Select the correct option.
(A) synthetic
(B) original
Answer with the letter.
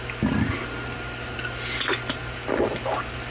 B